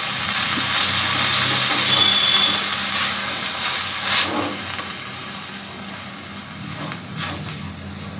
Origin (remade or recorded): recorded